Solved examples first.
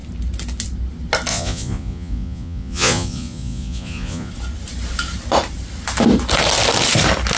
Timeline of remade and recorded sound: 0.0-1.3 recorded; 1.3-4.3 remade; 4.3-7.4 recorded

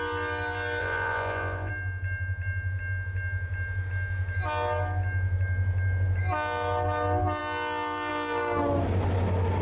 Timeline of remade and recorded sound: 0.0-0.8 recorded; 0.8-1.7 remade; 1.7-9.6 recorded